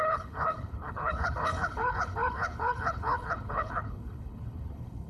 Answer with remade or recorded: remade